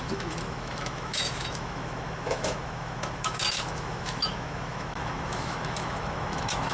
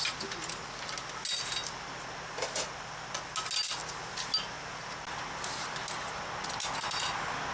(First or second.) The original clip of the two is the second